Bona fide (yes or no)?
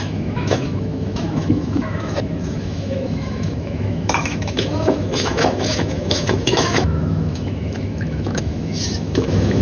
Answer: no